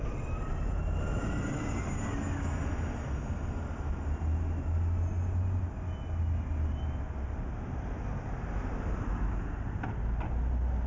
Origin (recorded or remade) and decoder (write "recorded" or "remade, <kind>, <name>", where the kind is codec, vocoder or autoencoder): recorded